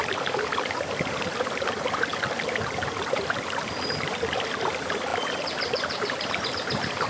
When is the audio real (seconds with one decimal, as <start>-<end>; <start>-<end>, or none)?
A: none

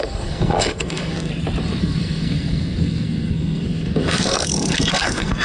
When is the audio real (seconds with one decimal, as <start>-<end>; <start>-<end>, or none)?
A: 1.3-1.8

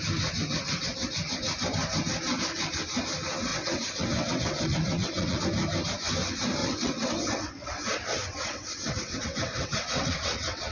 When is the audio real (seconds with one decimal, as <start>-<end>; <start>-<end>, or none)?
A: 0.0-3.5; 5.4-6.6

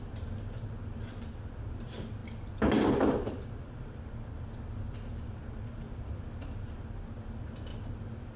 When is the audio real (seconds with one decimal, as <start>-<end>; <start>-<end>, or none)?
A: 0.0-8.4